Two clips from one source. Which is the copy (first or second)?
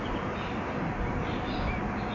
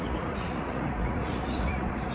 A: second